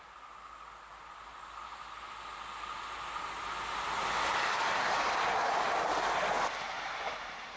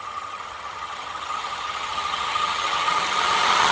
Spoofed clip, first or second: second